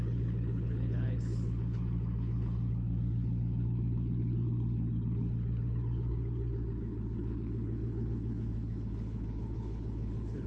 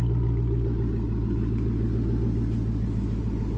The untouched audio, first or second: second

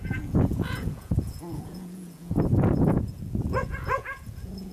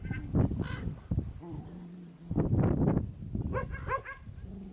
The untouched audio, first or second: second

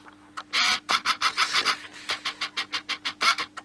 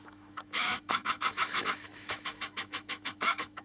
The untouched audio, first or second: first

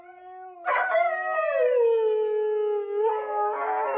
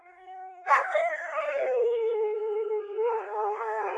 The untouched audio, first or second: first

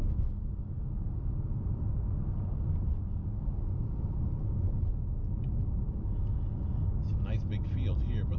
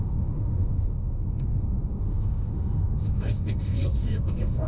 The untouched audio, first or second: first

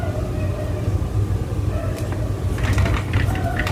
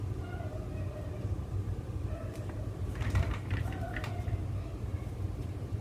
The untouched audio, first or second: first